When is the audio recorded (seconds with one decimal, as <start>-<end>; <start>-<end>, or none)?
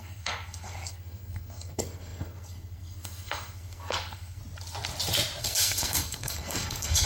4.4-5.4